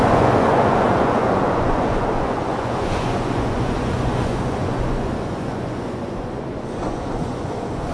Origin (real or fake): fake